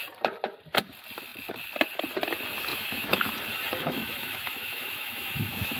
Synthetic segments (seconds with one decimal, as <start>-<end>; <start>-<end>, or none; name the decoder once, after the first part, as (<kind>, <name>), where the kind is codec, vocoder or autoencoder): 2.7-3.3 (autoencoder, DAC-VAE); 3.8-5.8